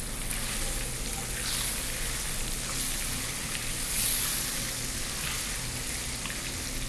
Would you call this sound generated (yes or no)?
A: no